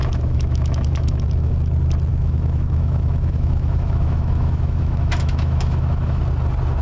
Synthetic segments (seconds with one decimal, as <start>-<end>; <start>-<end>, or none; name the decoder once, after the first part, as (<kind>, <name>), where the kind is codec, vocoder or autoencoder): 0.0-1.5 (autoencoder, DAC-VAE); 2.1-6.2